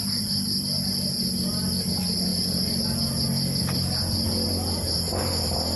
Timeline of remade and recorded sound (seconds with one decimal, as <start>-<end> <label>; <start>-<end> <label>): 0.0-5.8 recorded